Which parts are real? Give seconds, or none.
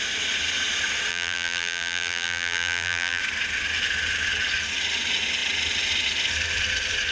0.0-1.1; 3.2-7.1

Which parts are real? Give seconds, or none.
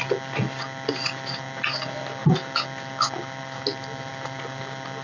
0.0-5.0